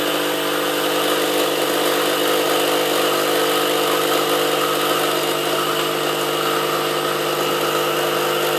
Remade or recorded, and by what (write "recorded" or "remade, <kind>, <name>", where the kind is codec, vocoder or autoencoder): recorded